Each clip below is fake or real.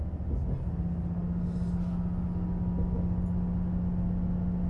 real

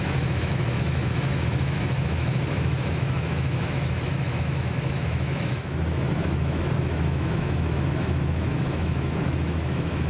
fake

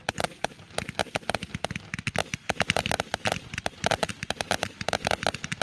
real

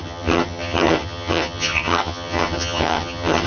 fake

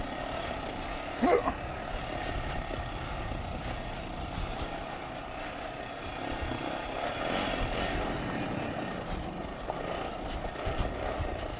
real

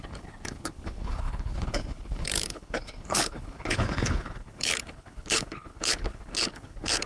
fake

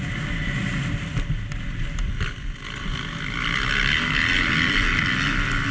real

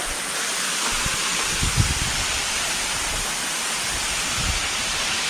real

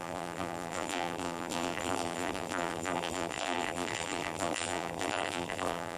fake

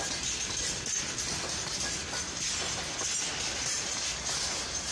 real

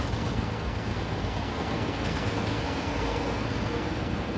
fake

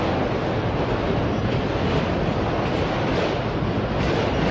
real